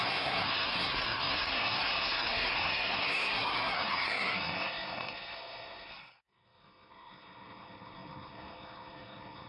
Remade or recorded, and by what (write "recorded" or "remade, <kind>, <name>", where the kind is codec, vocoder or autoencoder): remade, codec, SNAC